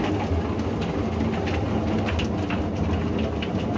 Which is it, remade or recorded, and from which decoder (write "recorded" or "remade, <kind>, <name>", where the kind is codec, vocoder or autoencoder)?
recorded